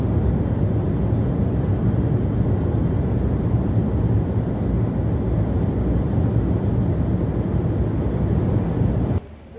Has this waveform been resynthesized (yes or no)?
no